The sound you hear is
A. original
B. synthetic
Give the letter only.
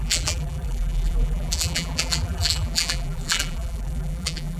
B